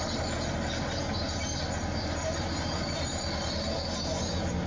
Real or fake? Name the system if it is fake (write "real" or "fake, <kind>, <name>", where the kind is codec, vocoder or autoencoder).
real